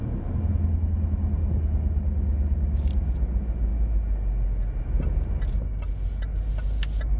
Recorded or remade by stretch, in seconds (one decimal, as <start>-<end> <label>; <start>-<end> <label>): 0.0-7.2 recorded